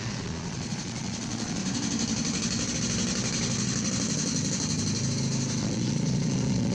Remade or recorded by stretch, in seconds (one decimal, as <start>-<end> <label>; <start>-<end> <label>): 0.0-1.6 remade; 1.6-5.6 recorded; 5.6-6.7 remade